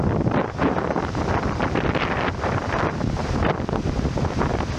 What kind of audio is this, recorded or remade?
recorded